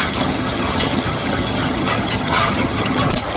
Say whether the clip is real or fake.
fake